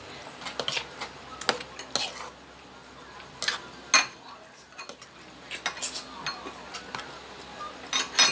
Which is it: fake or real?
real